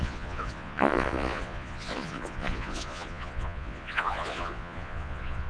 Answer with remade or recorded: remade